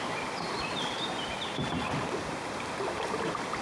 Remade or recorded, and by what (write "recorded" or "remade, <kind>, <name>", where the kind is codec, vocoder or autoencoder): recorded